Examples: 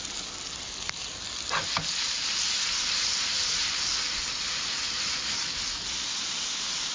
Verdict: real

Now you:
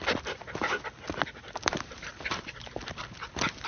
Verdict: real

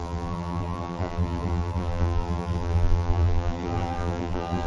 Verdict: fake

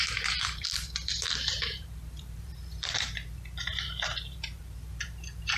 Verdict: fake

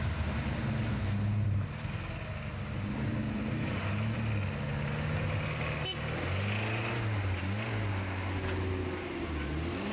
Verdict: real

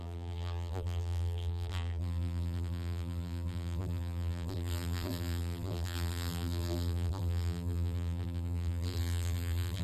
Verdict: fake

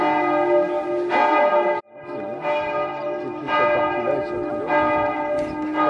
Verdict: real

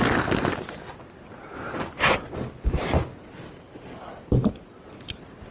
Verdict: real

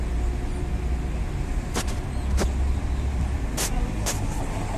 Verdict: real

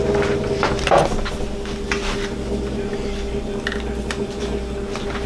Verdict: real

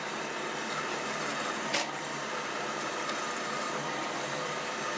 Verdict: fake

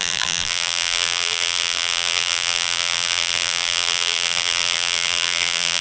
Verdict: fake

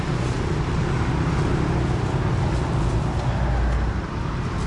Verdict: real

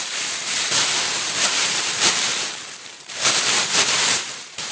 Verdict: fake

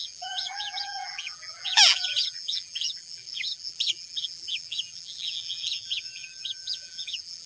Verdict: fake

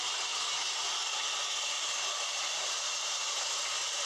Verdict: real